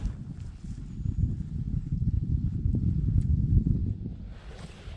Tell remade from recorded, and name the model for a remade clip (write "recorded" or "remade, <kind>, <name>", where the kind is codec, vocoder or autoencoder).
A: remade, vocoder, BigVGAN v2